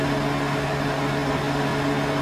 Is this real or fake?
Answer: real